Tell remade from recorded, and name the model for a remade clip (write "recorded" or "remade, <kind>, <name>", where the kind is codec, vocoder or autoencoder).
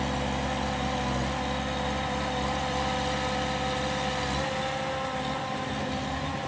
recorded